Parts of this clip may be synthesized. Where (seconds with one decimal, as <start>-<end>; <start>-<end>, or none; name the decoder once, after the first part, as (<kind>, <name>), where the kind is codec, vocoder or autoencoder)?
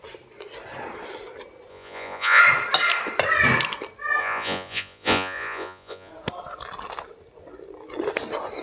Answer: 1.7-2.4 (vocoder, Vocos); 4.2-6.1